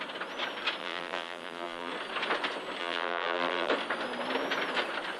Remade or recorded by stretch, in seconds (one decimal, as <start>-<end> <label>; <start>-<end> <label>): 0.0-0.8 recorded; 0.8-1.9 remade; 1.9-2.8 recorded; 2.8-3.7 remade; 3.7-5.2 recorded